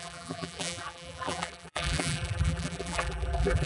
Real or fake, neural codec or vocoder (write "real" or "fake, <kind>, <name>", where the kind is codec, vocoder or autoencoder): fake, vocoder, BigVGAN v2